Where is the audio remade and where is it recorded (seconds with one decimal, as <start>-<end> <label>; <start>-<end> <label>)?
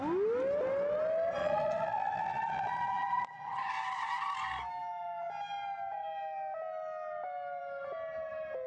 0.0-1.4 recorded; 1.4-3.7 remade; 3.7-8.7 recorded